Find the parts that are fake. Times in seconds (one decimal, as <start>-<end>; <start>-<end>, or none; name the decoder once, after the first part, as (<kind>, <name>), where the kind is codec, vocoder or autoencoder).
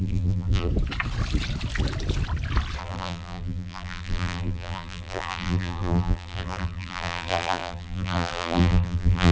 0.0-0.7 (vocoder, BigVGAN v2); 2.8-9.3